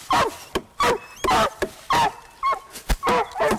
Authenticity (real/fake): real